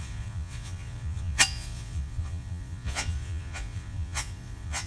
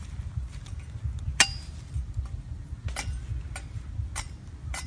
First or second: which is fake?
first